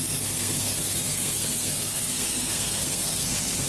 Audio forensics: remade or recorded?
remade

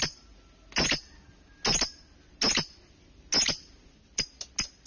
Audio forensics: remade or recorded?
recorded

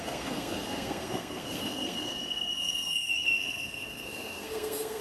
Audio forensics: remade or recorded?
remade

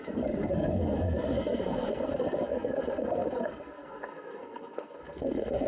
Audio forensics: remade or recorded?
remade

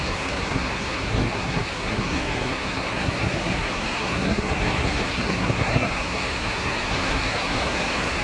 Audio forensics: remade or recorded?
remade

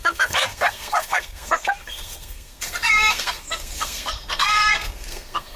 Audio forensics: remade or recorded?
remade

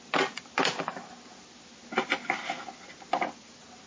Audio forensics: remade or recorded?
recorded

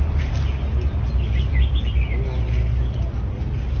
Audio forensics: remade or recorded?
recorded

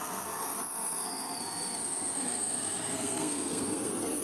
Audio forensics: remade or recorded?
remade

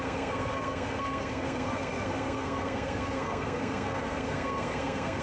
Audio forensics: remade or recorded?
remade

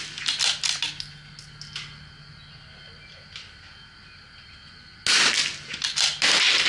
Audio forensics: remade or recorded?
recorded